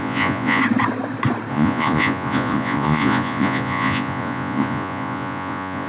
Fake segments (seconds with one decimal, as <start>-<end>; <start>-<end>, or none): 0.0-0.6; 1.5-5.9